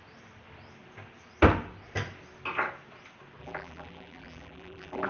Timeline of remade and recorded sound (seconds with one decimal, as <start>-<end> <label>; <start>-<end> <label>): 0.0-3.4 recorded; 3.4-5.1 remade